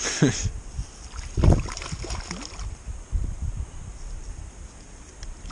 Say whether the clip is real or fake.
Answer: real